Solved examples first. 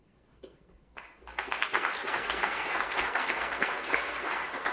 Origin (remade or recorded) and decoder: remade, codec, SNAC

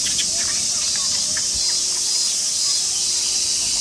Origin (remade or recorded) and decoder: recorded